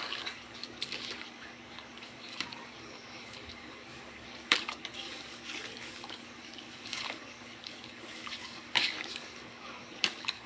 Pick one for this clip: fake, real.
fake